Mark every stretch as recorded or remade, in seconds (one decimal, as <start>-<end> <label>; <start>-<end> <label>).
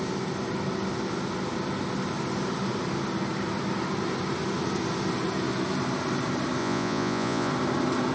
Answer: 0.0-6.6 recorded; 6.6-7.5 remade; 7.5-8.1 recorded